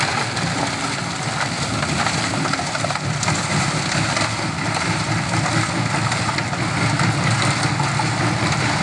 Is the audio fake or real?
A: real